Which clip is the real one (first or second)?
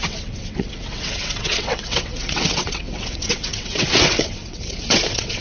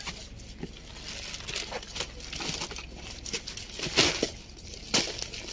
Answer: second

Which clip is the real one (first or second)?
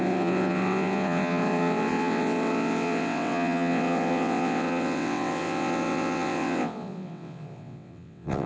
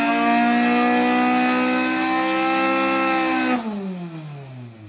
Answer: second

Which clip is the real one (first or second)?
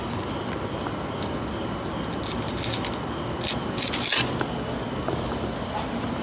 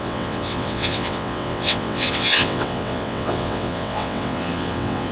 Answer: first